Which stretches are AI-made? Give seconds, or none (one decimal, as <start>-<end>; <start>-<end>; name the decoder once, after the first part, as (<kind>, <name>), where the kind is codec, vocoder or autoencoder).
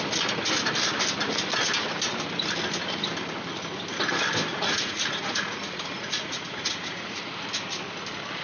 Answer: 4.5-7.2 (vocoder, Vocos)